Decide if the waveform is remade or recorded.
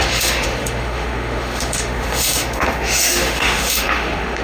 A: remade